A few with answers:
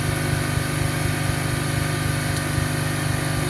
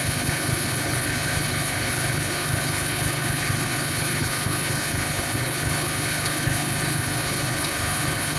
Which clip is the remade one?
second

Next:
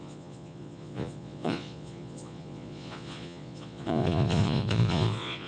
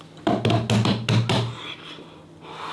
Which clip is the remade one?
first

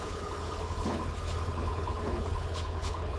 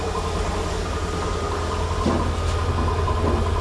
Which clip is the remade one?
first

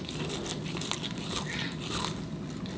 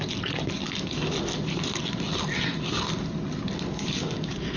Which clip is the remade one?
first